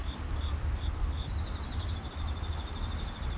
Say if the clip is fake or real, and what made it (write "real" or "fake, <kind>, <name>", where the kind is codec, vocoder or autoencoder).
real